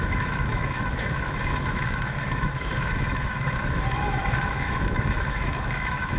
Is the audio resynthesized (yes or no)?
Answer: yes